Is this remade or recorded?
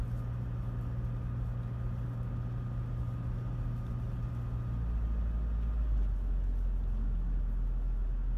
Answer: recorded